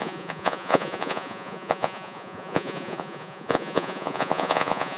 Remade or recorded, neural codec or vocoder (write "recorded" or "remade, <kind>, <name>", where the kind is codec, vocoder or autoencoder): remade, vocoder, Vocos